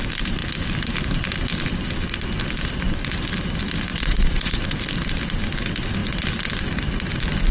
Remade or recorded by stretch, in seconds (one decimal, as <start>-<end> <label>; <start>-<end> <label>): 0.0-3.9 recorded; 3.9-4.6 remade; 4.6-7.5 recorded